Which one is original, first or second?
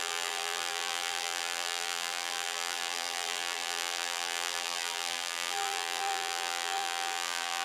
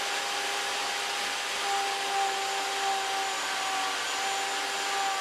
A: second